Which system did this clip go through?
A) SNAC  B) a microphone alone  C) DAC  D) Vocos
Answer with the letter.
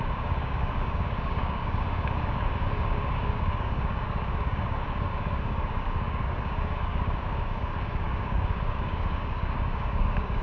C